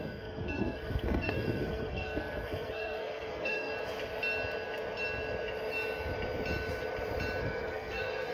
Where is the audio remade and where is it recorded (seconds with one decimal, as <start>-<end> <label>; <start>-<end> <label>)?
0.0-3.7 remade; 3.7-7.4 recorded; 7.4-8.3 remade

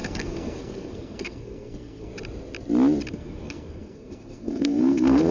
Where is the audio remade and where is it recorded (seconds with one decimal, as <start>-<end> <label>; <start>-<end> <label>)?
0.0-2.1 remade; 2.1-3.1 recorded; 3.1-5.3 remade

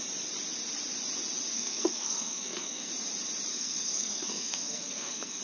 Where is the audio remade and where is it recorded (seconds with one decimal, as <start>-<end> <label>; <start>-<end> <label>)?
0.0-1.5 recorded; 1.5-2.9 remade; 2.9-3.5 recorded; 3.5-5.4 remade

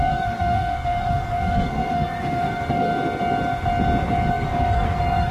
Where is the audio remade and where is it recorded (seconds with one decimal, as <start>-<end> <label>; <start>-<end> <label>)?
0.0-2.9 remade; 2.9-4.3 recorded; 4.3-5.3 remade

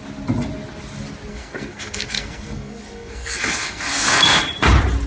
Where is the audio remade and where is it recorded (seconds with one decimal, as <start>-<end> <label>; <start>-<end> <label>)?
0.0-1.3 recorded; 1.3-4.4 remade; 4.4-5.1 recorded

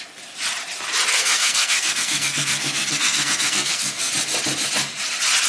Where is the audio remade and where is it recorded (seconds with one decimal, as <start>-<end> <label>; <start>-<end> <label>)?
0.0-1.1 recorded; 1.1-4.1 remade; 4.1-5.5 recorded

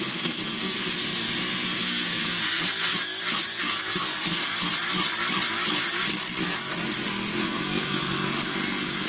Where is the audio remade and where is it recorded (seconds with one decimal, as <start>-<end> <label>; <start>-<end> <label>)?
0.0-1.0 remade; 1.0-1.8 recorded; 1.8-2.9 remade; 2.9-3.6 recorded; 3.6-4.4 remade; 4.4-7.4 recorded; 7.4-9.1 remade

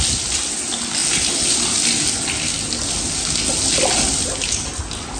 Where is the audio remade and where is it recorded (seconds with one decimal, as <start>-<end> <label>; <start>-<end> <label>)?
0.0-5.2 recorded